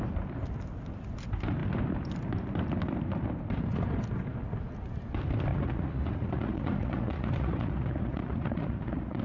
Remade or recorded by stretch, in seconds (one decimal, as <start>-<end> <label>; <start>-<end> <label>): 0.0-5.5 recorded; 5.5-9.2 remade